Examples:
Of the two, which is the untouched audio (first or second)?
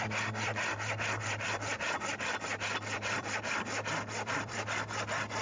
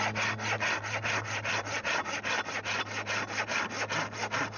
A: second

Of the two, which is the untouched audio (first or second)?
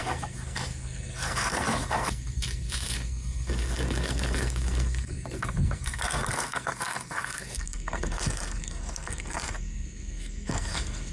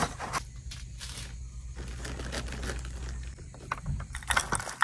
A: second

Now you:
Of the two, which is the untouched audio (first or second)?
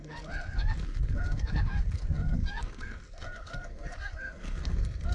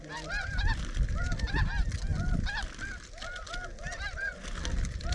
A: second